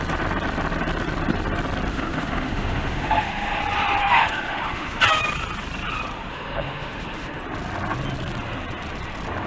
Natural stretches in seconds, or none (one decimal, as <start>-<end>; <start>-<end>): 0.0-1.9; 3.6-4.0; 5.0-6.3; 7.4-9.5